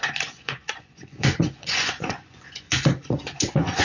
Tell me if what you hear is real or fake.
fake